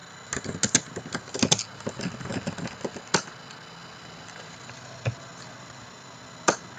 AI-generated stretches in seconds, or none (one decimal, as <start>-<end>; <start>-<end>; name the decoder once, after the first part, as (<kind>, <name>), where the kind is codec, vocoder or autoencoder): 3.8-6.2 (vocoder, BigVGAN v2)